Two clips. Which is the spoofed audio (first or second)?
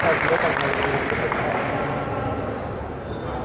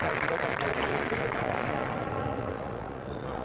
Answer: second